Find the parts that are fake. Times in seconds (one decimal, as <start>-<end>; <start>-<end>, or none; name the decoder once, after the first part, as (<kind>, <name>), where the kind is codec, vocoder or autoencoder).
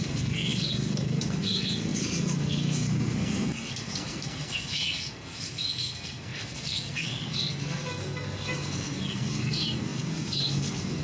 0.0-11.0 (codec, SNAC)